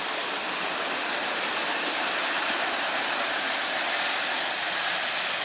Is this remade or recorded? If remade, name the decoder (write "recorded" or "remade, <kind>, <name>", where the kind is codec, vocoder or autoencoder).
recorded